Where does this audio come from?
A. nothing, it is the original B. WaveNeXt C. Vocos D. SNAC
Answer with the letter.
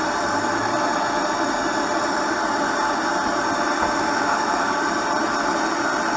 A